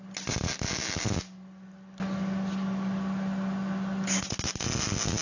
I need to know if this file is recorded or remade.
recorded